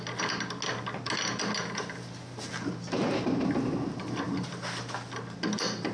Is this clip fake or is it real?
real